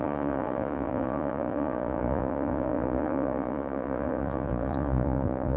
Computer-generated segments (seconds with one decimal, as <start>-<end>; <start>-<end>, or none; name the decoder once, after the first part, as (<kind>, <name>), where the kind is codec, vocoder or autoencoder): 0.0-5.6 (vocoder, Vocos)